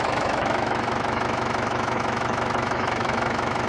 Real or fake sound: fake